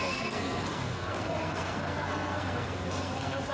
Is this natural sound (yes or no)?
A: no